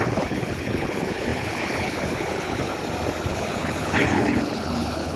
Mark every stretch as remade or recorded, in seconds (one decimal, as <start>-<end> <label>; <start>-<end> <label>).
0.0-2.7 remade; 2.7-3.3 recorded; 3.3-5.2 remade